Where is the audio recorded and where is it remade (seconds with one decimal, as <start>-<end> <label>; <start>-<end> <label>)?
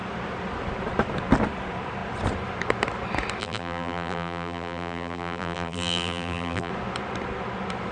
0.0-3.4 recorded; 3.4-6.7 remade; 6.7-7.9 recorded